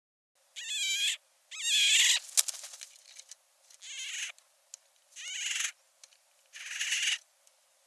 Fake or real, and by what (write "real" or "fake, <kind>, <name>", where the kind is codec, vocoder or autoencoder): real